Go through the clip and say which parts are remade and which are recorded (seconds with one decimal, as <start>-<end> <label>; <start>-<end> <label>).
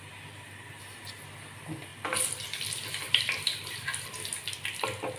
0.0-1.9 recorded; 1.9-5.2 remade